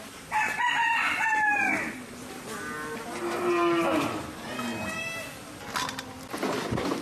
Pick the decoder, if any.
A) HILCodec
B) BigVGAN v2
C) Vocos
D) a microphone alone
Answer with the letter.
D